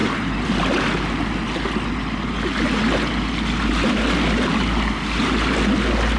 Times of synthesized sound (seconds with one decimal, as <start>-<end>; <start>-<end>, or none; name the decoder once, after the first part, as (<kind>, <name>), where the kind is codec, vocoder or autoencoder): none